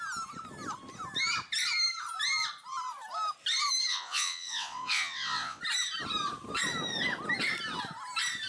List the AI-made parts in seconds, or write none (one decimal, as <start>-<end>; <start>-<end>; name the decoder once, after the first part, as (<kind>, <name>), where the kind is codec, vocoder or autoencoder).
3.9-5.6 (vocoder, WaveNeXt)